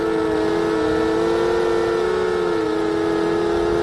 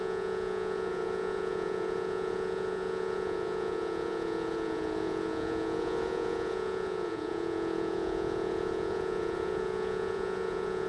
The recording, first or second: first